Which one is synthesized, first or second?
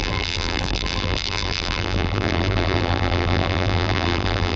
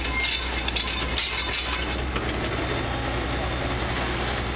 first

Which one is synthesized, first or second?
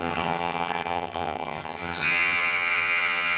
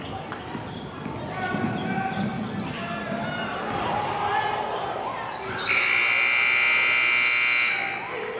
first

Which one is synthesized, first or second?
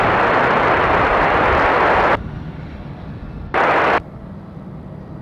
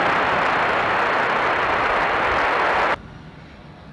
first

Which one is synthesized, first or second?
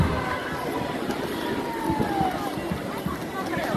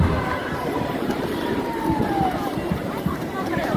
second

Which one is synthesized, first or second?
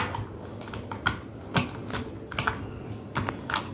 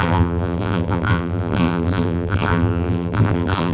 second